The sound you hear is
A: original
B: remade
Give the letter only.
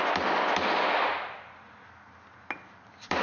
A